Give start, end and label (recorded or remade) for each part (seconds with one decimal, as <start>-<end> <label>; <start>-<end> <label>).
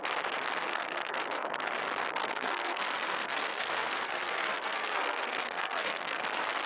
0.0-0.7 recorded; 0.7-1.6 remade; 1.6-2.2 recorded; 2.2-6.2 remade; 6.2-6.7 recorded